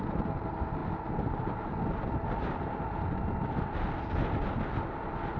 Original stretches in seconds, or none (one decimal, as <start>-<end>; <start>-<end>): 0.0-5.4

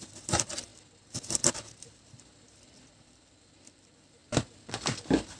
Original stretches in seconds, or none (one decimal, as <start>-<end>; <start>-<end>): 0.7-2.9; 4.2-5.4

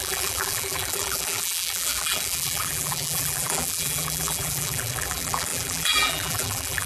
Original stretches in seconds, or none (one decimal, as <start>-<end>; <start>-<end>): none

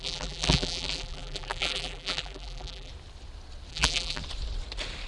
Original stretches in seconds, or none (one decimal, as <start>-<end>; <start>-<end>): 2.9-3.7; 4.2-5.1

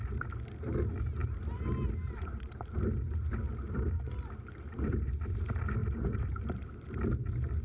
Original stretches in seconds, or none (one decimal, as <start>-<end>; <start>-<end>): 0.0-1.2; 2.8-5.8; 6.9-7.6

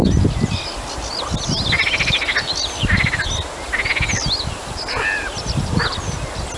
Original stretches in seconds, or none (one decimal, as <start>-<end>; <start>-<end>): 0.0-6.6

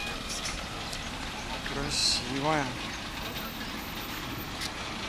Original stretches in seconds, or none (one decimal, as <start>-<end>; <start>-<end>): 0.0-5.1